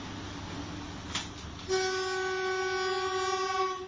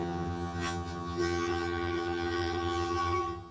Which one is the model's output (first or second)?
second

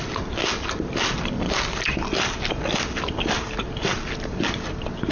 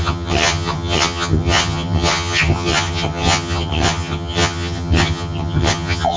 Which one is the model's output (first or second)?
second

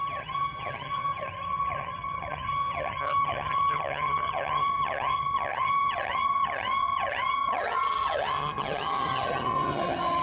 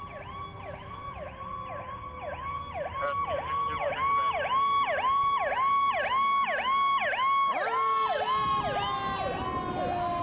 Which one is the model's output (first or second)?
first